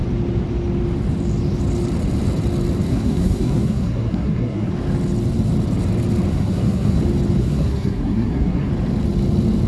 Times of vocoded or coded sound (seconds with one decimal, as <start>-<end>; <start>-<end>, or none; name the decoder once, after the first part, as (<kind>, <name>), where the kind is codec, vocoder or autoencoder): 2.9-4.7 (codec, SNAC); 6.3-7.0; 7.4-8.7